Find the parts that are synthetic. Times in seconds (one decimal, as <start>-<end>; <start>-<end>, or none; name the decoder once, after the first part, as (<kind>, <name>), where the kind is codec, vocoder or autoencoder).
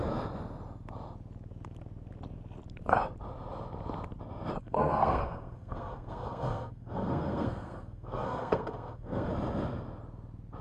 4.6-9.3 (codec, SNAC)